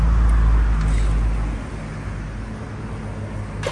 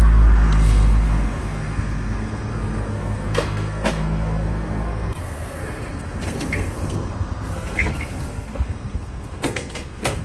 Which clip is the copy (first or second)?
second